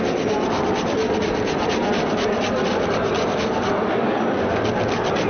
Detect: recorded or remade recorded